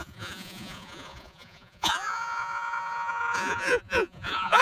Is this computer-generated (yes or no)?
yes